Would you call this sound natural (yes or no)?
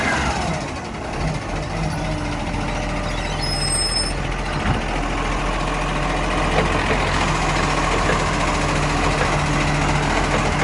yes